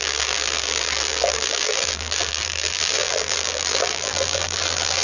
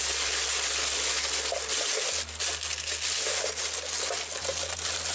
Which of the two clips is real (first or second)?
second